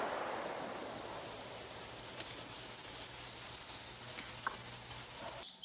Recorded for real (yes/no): yes